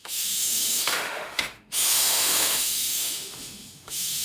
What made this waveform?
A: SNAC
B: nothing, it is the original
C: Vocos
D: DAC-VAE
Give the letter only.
D